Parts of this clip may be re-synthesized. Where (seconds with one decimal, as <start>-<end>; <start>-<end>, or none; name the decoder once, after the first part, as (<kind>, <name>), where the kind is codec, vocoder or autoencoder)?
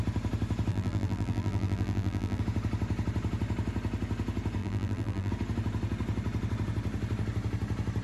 0.7-2.4 (vocoder, BigVGAN v2); 4.6-5.3